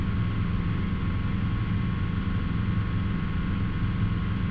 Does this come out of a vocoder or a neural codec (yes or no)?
no